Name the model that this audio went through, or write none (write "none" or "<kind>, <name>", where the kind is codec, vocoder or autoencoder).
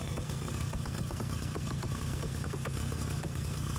codec, SNAC